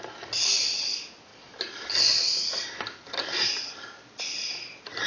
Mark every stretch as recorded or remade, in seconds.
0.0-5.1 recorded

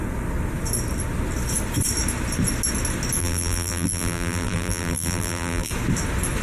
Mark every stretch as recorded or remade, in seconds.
0.0-3.2 recorded; 3.2-5.7 remade; 5.7-6.4 recorded

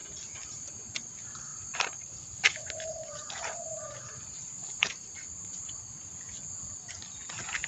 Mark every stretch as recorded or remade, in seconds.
0.0-0.6 remade; 0.6-1.5 recorded; 1.5-5.8 remade; 5.8-7.7 recorded

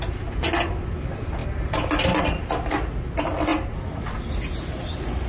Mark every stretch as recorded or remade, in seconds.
0.0-5.3 recorded

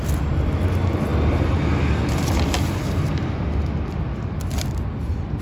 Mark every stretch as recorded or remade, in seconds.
0.0-5.4 recorded

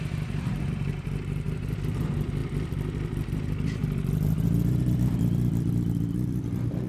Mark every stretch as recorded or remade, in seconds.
0.0-6.9 remade